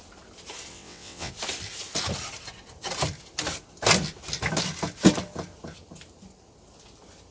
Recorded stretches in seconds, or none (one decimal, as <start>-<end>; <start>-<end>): 0.0-0.7; 1.3-7.3